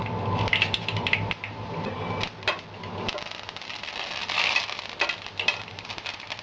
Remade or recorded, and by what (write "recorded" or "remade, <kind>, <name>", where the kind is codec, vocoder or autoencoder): recorded